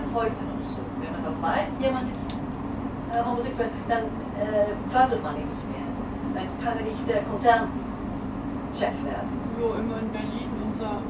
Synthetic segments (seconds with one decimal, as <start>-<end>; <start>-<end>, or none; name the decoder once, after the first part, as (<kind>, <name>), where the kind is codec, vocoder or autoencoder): none